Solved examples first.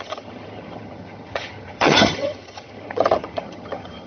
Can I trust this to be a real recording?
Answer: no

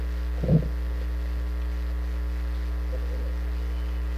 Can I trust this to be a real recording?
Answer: yes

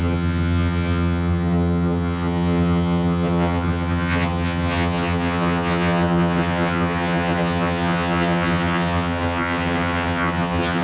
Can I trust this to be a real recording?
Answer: no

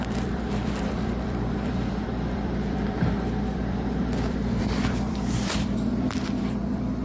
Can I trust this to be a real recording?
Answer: no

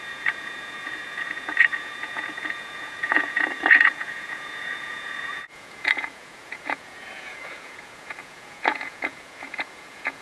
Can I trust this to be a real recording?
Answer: no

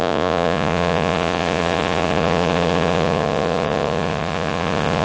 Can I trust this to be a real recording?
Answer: no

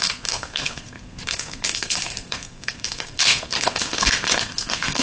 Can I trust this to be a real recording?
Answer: no